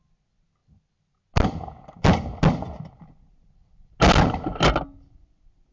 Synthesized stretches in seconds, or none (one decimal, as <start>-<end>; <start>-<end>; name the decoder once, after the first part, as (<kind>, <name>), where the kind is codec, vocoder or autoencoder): none